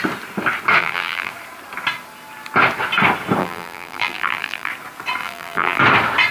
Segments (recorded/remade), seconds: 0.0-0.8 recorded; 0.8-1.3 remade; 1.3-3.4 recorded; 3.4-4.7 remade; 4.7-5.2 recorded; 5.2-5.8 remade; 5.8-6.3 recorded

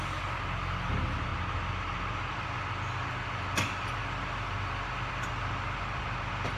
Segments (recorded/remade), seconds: 0.0-6.6 recorded